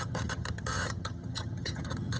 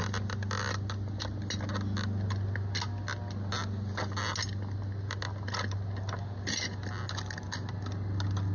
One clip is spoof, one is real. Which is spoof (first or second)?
first